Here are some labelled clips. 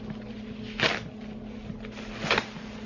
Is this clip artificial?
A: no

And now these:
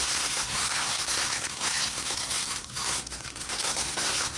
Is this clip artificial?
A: yes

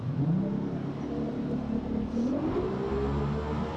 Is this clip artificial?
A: no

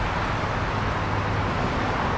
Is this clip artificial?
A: no